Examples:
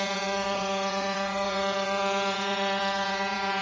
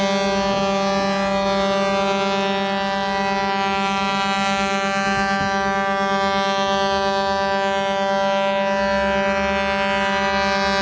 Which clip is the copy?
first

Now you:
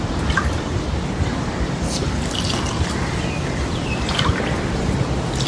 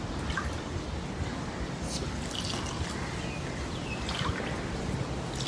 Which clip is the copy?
first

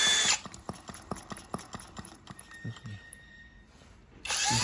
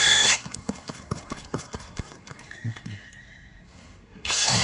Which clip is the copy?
second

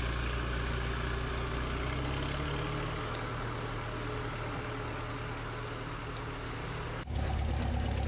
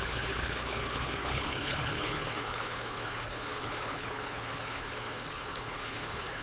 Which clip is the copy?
second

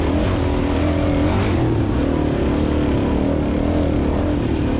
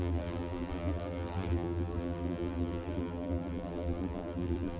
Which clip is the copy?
second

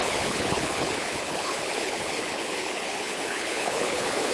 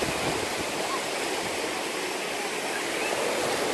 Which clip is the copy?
first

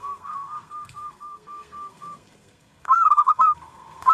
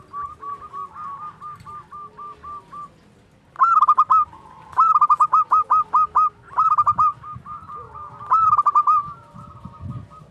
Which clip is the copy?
first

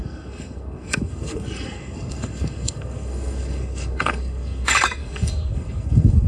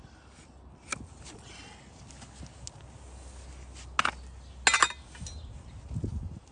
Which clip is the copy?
first